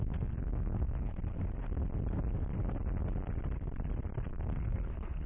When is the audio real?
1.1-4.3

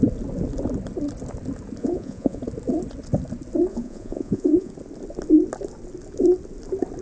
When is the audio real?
0.0-1.8; 2.4-3.7; 4.7-7.0

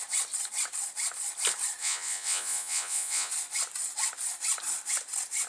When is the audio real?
0.0-1.8; 3.3-5.5

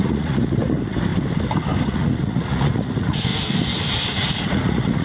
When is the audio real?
1.1-1.8; 3.3-4.1

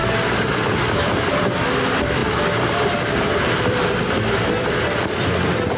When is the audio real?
none

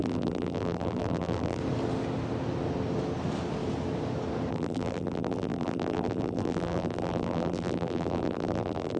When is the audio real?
1.6-4.5